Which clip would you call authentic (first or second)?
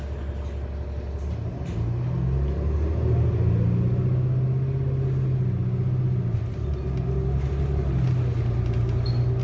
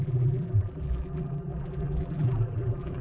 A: first